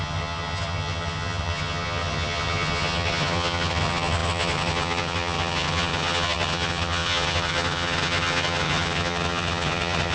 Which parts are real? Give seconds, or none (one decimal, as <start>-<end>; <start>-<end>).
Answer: none